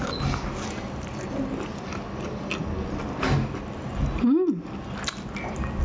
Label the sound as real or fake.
real